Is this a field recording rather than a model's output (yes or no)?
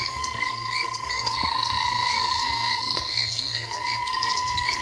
no